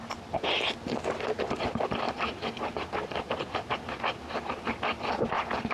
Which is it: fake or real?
real